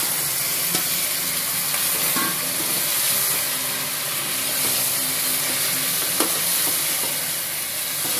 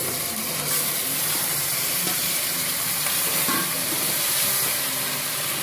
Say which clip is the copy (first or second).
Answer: second